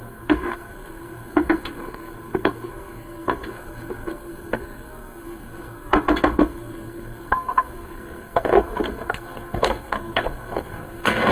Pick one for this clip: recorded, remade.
remade